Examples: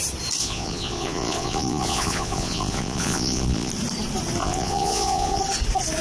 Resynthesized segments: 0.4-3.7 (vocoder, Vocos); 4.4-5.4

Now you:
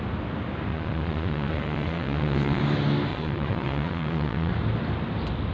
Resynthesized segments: 0.7-2.6 (vocoder, Vocos); 3.1-4.5

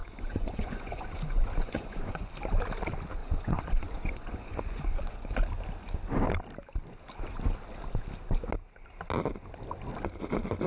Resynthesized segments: 0.0-2.3 (vocoder, Vocos); 3.2-5.4